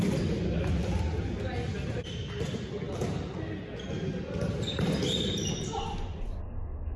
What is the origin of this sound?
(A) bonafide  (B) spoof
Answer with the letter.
A